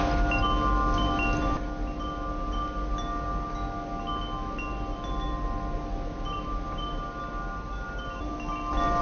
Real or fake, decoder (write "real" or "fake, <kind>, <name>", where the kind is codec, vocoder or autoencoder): real